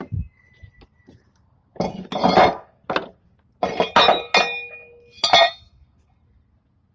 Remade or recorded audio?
recorded